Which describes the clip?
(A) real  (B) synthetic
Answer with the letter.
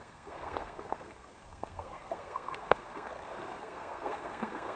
B